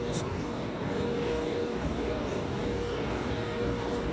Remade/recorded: remade